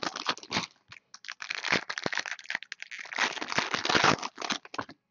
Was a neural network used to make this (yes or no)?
no